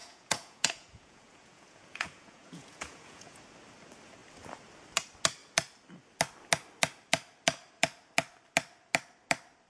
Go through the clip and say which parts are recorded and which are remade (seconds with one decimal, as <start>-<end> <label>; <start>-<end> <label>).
0.0-3.4 remade; 3.4-9.7 recorded